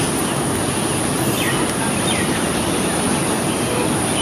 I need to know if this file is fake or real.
real